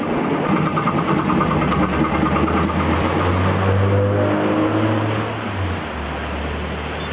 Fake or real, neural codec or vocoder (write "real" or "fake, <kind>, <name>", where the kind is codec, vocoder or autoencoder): fake, vocoder, BigVGAN v2